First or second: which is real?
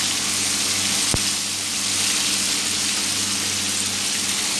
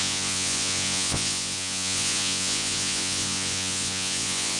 first